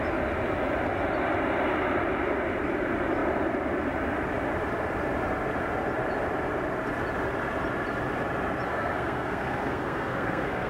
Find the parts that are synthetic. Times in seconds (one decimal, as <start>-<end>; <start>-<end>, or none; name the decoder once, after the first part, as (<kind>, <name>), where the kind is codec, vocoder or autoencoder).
8.7-10.7 (codec, SNAC)